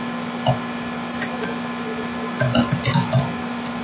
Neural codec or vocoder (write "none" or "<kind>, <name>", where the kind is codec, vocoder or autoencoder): none